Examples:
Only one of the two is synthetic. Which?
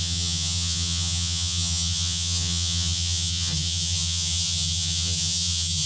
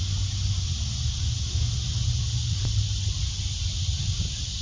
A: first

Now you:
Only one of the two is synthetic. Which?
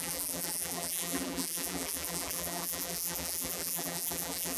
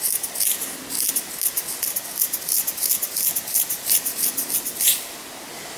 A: first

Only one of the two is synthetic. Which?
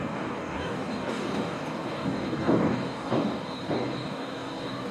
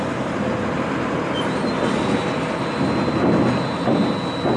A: first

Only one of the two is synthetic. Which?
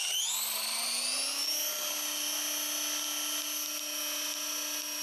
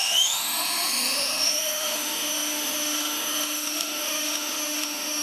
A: second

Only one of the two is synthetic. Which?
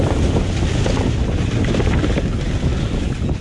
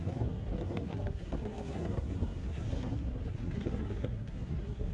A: second